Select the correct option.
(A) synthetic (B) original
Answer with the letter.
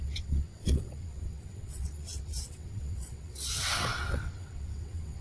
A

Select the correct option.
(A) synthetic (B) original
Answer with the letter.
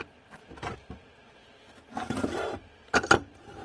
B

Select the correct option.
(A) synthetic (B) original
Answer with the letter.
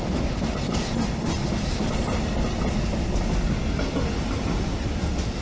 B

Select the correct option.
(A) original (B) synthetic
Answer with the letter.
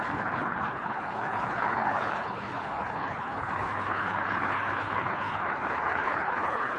B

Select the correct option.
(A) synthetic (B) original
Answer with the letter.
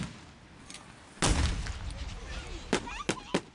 B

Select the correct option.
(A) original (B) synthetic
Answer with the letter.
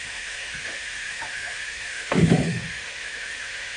B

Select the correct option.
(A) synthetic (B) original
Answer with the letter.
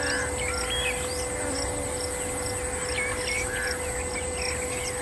B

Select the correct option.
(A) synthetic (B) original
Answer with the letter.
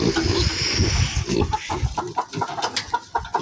B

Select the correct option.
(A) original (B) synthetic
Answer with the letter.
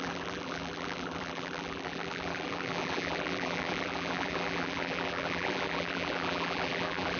B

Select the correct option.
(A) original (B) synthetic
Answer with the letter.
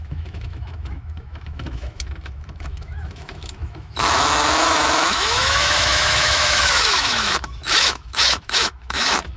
B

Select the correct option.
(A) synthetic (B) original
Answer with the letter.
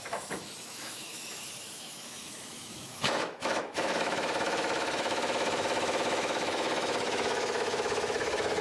A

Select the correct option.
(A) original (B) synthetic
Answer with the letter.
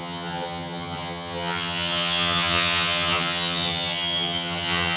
B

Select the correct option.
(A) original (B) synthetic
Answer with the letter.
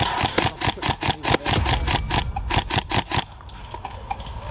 A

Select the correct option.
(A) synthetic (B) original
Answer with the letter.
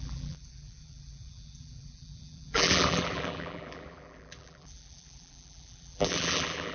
A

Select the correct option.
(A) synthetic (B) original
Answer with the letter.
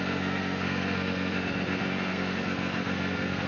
A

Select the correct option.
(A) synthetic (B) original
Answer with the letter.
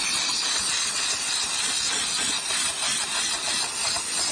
B